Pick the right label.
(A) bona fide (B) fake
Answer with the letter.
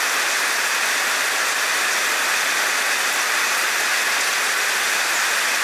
A